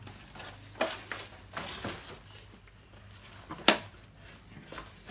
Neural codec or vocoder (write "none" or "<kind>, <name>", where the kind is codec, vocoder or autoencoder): none